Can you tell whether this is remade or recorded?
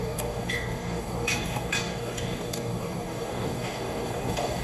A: remade